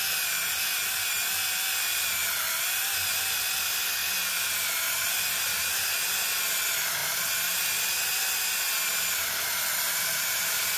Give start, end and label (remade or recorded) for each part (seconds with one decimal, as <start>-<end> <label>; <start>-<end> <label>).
0.0-10.8 recorded